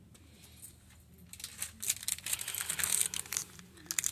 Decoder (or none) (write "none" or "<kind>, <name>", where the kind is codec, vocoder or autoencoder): none